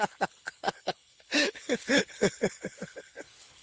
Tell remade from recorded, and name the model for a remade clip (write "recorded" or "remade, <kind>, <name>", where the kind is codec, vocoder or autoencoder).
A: remade, codec, HILCodec